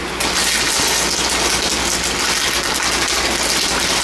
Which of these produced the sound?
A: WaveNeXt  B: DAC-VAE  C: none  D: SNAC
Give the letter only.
C